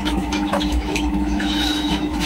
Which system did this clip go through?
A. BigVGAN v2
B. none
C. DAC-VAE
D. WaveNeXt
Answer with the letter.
C